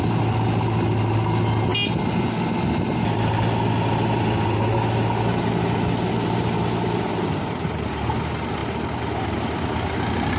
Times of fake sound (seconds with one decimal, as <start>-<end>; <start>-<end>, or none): none